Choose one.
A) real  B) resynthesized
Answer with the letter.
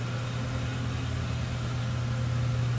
A